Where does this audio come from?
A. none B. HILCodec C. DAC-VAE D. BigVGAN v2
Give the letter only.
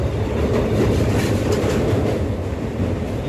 A